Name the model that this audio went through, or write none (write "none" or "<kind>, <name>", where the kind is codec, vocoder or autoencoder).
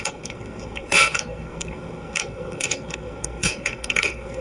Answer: codec, SNAC